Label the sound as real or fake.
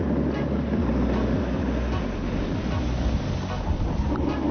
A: real